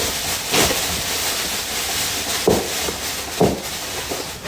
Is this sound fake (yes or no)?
no